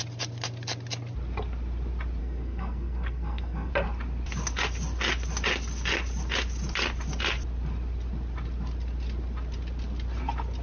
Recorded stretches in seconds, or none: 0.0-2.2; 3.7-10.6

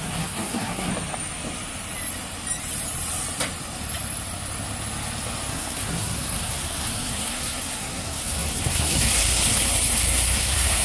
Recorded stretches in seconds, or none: 0.9-5.5

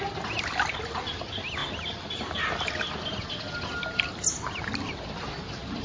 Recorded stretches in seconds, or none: 0.0-5.8

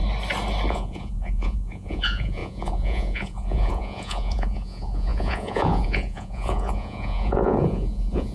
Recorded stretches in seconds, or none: 0.0-0.7

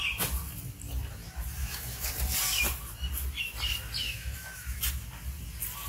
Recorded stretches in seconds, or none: 0.0-1.6; 2.1-4.0; 4.8-5.9